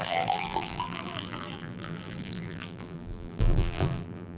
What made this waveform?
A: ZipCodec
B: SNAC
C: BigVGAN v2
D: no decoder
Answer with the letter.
C